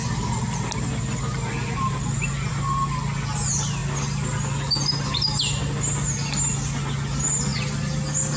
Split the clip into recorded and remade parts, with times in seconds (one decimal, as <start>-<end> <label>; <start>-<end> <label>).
0.0-8.4 recorded